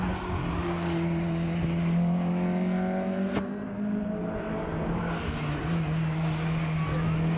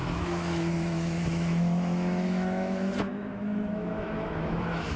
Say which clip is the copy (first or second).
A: second